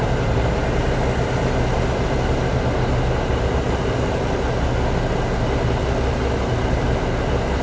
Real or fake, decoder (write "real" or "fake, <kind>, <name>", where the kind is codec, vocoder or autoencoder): real